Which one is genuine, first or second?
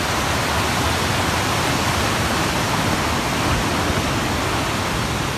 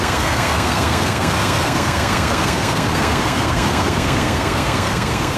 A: first